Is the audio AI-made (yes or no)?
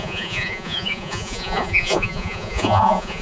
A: yes